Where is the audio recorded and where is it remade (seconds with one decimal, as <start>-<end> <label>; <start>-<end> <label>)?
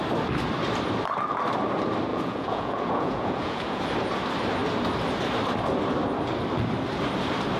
0.0-2.1 recorded; 2.1-3.8 remade; 3.8-7.6 recorded